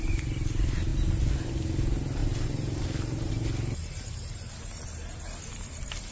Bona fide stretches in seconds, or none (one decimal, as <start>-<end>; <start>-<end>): 0.0-2.2; 3.3-6.1